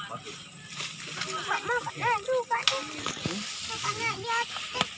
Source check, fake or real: real